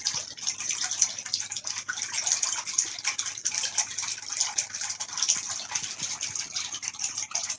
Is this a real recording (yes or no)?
yes